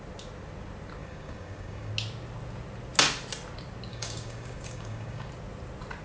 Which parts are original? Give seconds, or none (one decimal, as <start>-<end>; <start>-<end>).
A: 0.0-1.0; 1.9-3.9; 5.3-6.0